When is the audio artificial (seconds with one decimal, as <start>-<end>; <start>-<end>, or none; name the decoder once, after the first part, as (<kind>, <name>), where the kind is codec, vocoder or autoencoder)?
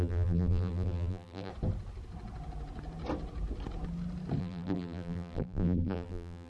0.0-1.5 (vocoder, BigVGAN v2); 4.4-6.5